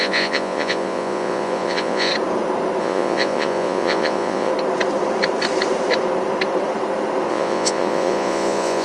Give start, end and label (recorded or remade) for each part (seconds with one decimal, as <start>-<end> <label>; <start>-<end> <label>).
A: 0.0-2.1 remade; 2.1-2.8 recorded; 2.8-4.5 remade; 4.5-7.3 recorded; 7.3-8.8 remade

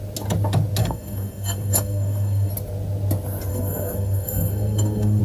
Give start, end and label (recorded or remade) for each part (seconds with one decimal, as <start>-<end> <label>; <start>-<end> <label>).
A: 0.0-0.8 recorded; 0.8-2.5 remade; 2.5-3.5 recorded; 3.5-5.2 remade

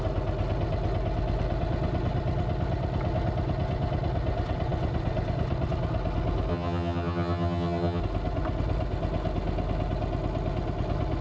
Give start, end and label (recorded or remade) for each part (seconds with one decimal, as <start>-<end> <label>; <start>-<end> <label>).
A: 0.0-6.5 recorded; 6.5-8.0 remade; 8.0-11.2 recorded

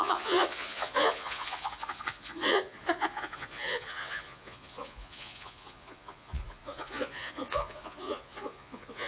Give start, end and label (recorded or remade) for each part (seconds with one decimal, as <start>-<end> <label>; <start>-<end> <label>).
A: 0.0-9.1 remade

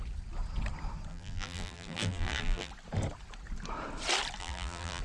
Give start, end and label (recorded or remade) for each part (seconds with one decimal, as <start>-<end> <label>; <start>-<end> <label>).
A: 0.0-1.1 recorded; 1.1-2.7 remade; 2.7-4.4 recorded; 4.4-5.0 remade

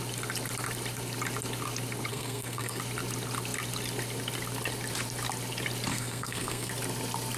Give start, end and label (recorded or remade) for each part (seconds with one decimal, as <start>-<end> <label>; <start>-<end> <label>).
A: 0.0-2.1 recorded; 2.1-2.8 remade; 2.8-5.9 recorded; 5.9-6.7 remade; 6.7-7.4 recorded